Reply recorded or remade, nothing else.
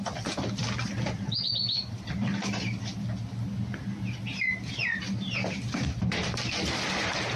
recorded